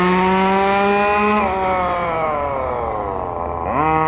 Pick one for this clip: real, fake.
real